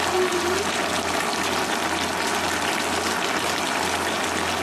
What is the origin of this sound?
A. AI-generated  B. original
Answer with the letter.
B